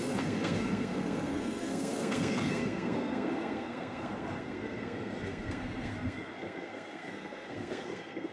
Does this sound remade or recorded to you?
remade